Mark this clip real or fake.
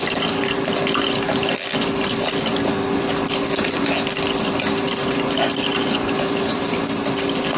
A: real